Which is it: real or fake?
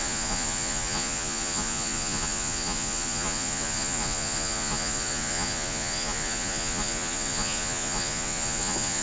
fake